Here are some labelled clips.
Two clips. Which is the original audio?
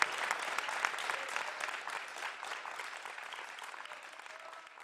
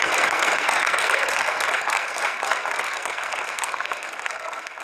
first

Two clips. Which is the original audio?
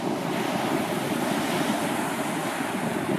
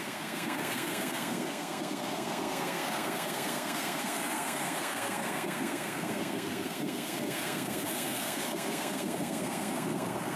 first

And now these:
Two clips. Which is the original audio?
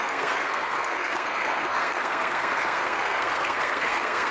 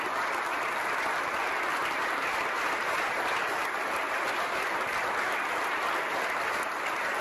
second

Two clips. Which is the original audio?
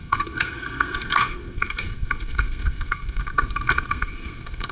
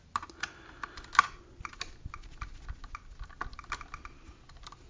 second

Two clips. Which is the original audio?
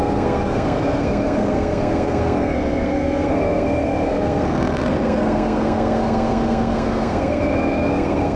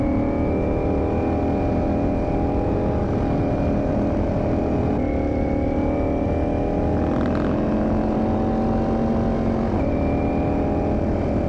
second